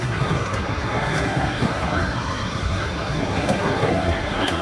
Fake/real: fake